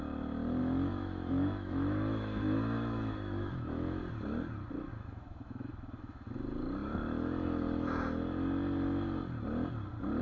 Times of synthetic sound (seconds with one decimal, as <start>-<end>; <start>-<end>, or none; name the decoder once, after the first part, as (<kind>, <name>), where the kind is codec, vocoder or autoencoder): 0.6-4.0 (autoencoder, DAC-VAE); 4.9-6.3